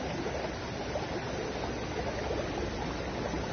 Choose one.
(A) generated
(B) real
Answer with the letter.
B